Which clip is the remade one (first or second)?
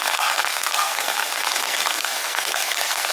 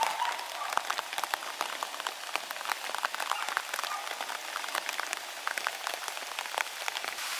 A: first